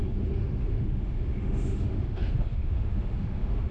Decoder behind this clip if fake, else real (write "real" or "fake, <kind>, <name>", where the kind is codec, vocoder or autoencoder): fake, autoencoder, DAC-VAE